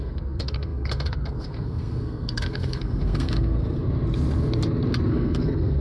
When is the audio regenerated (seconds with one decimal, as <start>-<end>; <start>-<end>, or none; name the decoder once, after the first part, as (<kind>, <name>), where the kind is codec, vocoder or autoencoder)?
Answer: 0.0-3.8 (codec, SNAC); 5.1-5.8